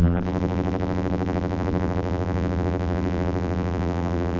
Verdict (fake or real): fake